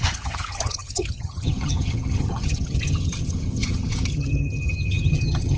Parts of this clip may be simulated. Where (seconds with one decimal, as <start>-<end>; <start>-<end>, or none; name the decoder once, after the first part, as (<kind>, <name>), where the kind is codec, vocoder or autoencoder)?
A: 0.0-5.6 (vocoder, HiFi-GAN)